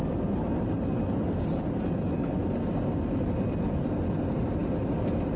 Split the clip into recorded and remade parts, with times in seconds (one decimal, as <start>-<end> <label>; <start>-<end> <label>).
0.0-5.4 recorded